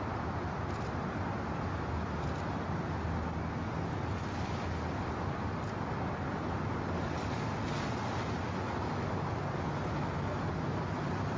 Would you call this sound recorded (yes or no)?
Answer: yes